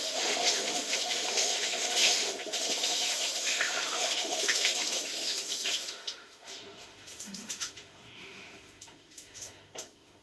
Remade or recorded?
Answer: remade